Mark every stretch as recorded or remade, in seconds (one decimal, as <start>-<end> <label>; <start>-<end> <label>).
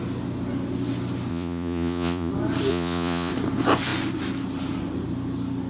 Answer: 0.0-1.3 recorded; 1.3-2.3 remade; 2.3-2.7 recorded; 2.7-3.3 remade; 3.3-5.7 recorded